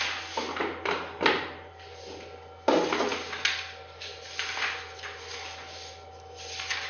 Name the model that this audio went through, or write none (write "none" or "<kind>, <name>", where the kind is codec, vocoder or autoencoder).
none